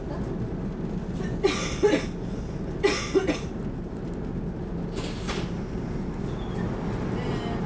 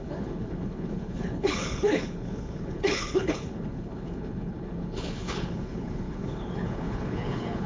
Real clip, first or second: first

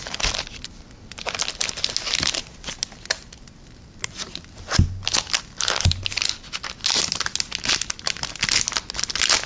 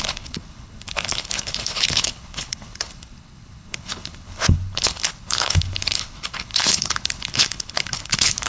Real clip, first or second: first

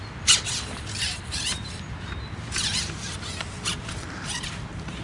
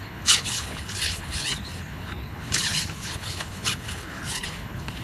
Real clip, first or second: first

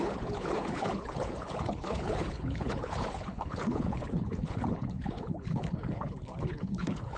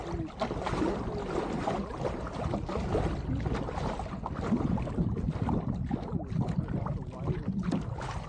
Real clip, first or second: second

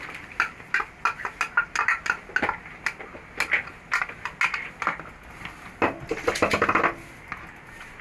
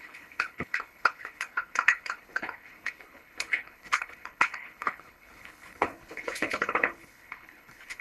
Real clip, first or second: first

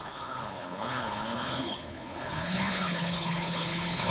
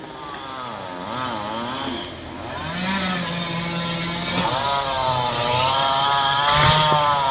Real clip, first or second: second